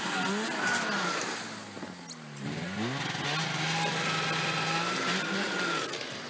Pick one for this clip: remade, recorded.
recorded